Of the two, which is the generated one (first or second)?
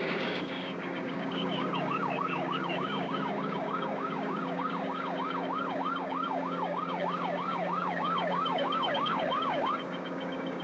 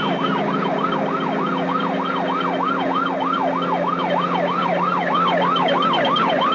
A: first